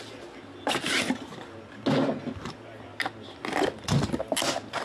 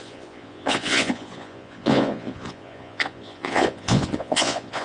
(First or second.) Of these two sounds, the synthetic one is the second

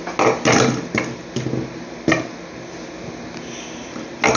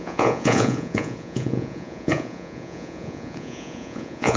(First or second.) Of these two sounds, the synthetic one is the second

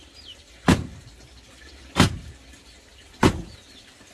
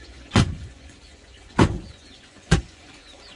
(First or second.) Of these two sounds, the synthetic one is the second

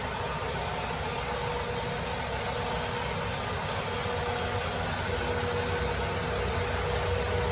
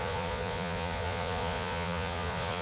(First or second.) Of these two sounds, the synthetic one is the second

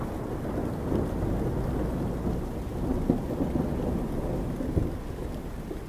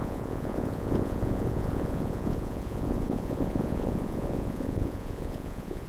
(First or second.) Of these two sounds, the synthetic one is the second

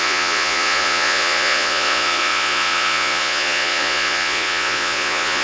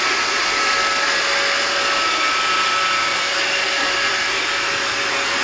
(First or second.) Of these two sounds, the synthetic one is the first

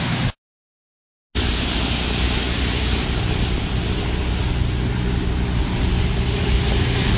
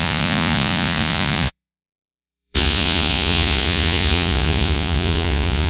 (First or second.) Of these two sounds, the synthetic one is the second